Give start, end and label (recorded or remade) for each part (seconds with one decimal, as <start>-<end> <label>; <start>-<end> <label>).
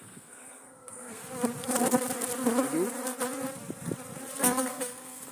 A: 0.0-1.2 remade; 1.2-4.4 recorded; 4.4-5.3 remade